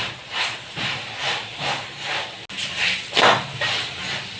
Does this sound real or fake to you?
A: real